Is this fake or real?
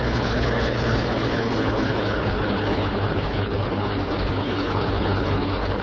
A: fake